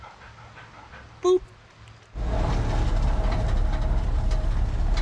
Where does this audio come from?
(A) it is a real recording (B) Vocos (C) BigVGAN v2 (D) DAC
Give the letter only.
A